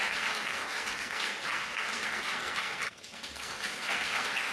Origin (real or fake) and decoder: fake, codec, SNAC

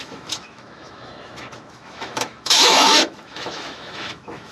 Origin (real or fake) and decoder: fake, autoencoder, DAC-VAE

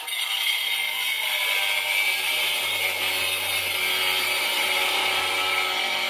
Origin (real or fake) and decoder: real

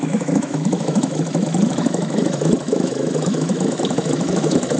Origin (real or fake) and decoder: fake, autoencoder, DAC-VAE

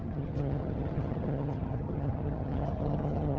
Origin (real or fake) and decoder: fake, vocoder, HiFi-GAN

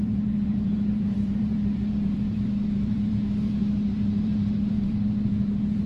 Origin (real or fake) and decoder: fake, vocoder, BigVGAN v2